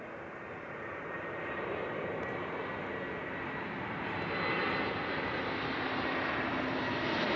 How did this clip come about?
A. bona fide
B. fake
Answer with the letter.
A